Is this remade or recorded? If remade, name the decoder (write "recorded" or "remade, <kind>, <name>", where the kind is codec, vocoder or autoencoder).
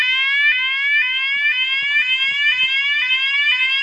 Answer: recorded